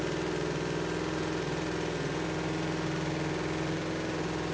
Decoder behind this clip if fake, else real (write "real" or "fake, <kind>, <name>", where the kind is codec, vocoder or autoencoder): real